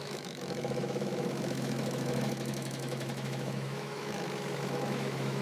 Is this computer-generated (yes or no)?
yes